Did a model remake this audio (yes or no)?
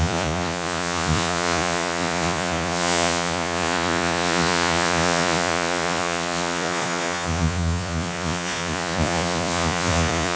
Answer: yes